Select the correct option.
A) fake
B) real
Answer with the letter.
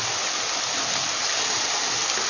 B